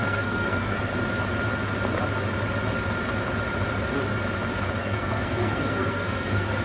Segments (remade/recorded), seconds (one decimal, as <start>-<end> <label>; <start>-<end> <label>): 0.0-0.9 remade; 0.9-4.8 recorded; 4.8-6.6 remade